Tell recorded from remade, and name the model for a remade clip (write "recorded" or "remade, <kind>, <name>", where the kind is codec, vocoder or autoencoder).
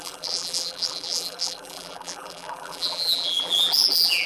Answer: remade, vocoder, BigVGAN v2